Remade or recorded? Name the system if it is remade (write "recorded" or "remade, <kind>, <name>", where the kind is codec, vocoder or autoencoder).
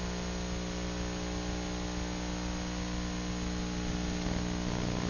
recorded